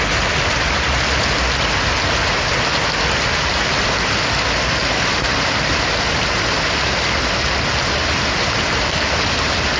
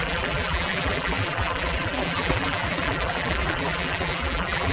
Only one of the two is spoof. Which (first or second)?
second